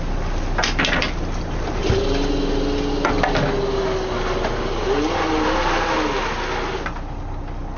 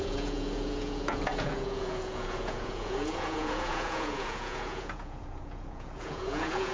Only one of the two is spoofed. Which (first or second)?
second